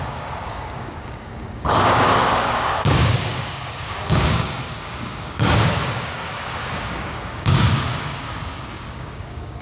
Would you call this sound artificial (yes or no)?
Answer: yes